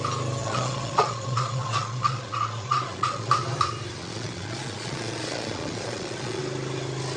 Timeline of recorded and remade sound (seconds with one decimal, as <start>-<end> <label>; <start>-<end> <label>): 0.0-0.4 recorded; 0.4-3.3 remade; 3.3-4.0 recorded; 4.0-6.4 remade; 6.4-7.2 recorded

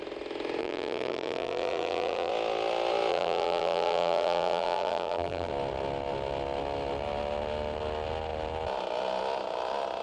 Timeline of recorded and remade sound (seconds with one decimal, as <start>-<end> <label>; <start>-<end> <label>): 0.0-0.6 recorded; 0.6-2.3 remade; 2.3-3.1 recorded; 3.1-5.5 remade; 5.5-10.0 recorded

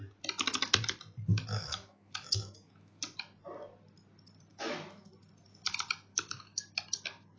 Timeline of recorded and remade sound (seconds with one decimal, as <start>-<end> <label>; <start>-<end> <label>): 0.0-1.3 recorded; 1.3-3.0 remade; 3.0-4.5 recorded; 4.5-5.1 remade; 5.1-6.1 recorded; 6.1-6.7 remade; 6.7-7.4 recorded

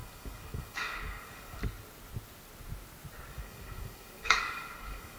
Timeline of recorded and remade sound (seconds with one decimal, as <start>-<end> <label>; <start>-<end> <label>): 0.0-1.6 remade; 1.6-3.3 recorded; 3.3-5.2 remade

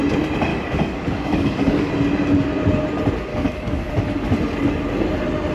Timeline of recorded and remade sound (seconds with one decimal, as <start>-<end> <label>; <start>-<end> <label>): 0.0-0.5 recorded; 0.5-1.9 remade; 1.9-3.3 recorded; 3.3-3.9 remade; 3.9-5.5 recorded

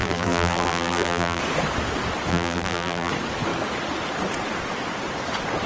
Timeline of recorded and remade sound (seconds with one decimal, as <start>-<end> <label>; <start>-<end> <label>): 0.0-1.4 remade; 1.4-2.3 recorded; 2.3-3.1 remade; 3.1-5.7 recorded